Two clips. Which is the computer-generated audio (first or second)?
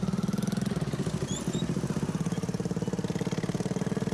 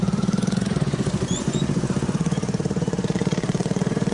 second